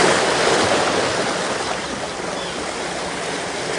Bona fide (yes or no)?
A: yes